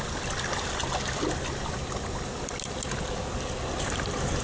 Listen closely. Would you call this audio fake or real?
real